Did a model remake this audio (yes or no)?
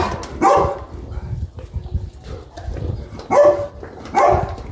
no